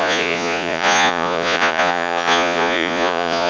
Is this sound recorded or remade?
remade